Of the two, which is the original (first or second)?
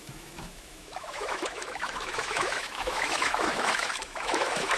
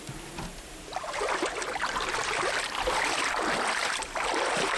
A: second